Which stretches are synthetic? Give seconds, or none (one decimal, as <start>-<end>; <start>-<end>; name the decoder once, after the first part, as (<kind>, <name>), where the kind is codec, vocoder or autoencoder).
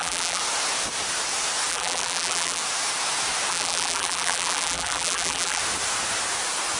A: 0.0-0.4 (vocoder, BigVGAN v2); 1.7-2.6; 3.5-5.6